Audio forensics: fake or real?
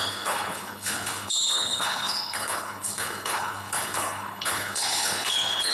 fake